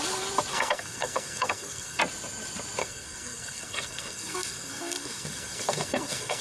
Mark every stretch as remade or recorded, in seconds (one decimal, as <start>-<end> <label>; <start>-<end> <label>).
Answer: 0.0-0.5 recorded; 0.5-2.0 remade; 2.0-2.8 recorded; 2.8-6.4 remade